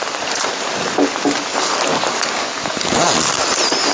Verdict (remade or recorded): recorded